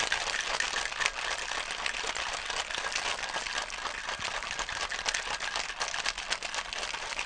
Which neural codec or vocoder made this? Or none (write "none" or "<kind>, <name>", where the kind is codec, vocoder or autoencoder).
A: none